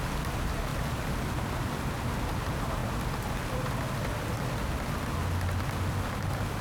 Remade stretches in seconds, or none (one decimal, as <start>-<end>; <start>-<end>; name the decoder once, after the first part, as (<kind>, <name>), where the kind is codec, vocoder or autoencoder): 0.7-2.0 (vocoder, BigVGAN v2)